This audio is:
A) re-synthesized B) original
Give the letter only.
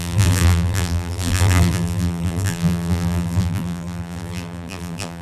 A